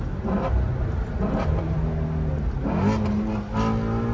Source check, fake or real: real